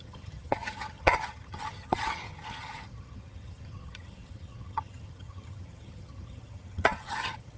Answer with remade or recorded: remade